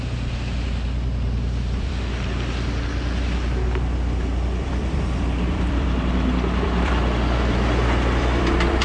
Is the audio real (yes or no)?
no